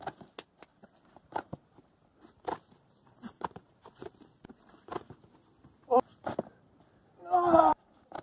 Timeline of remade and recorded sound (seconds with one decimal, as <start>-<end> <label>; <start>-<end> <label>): 0.0-0.7 recorded; 0.7-4.8 remade; 4.8-7.7 recorded; 7.7-8.2 remade